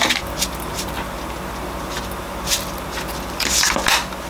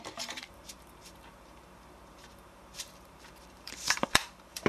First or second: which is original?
first